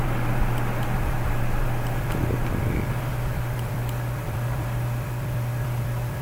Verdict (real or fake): fake